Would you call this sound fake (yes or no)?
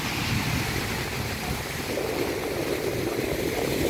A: no